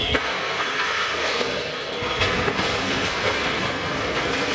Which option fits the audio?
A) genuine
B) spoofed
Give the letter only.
B